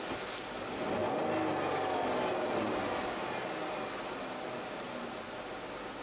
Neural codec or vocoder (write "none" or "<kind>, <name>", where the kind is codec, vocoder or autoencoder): none